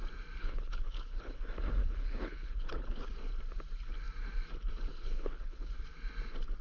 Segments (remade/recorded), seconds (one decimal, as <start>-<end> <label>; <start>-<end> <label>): 0.0-0.4 recorded; 0.4-1.4 remade; 1.4-1.8 recorded; 1.8-3.1 remade; 3.1-4.9 recorded; 4.9-5.7 remade; 5.7-6.6 recorded